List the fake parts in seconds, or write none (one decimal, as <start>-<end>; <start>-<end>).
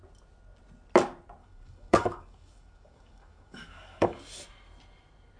1.4-4.2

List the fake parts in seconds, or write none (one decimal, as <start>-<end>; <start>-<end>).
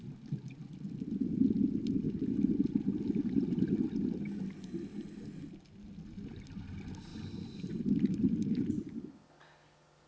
none